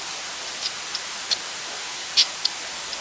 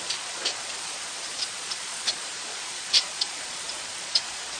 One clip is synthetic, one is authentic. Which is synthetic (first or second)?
second